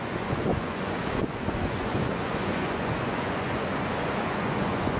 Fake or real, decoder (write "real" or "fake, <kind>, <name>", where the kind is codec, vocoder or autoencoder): fake, vocoder, Vocos